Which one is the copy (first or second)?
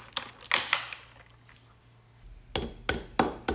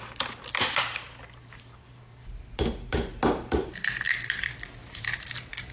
second